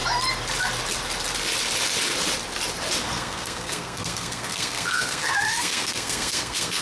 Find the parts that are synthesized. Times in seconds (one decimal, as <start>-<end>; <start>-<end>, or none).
3.0-6.8